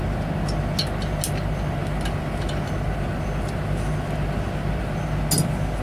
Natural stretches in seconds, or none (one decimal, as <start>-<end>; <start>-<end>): 0.0-5.8